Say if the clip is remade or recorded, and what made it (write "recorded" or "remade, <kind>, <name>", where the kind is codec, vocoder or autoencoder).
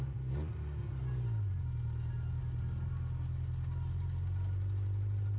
recorded